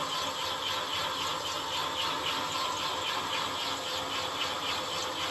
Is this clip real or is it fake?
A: real